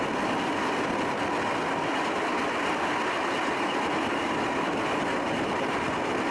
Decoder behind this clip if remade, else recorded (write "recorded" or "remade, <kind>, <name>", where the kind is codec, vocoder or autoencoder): remade, vocoder, BigVGAN v2